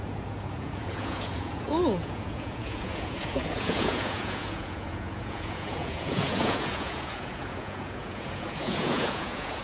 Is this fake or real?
fake